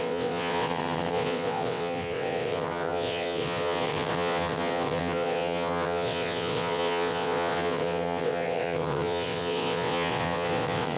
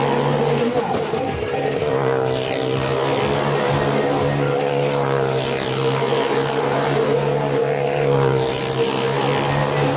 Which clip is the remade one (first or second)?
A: first